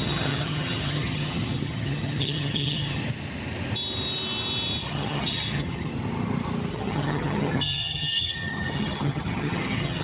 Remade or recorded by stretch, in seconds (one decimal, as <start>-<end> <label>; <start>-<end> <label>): 0.0-3.0 remade; 3.0-4.8 recorded; 4.8-5.9 remade; 5.9-6.7 recorded; 6.7-10.0 remade